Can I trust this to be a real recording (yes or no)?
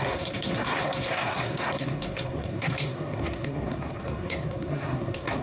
no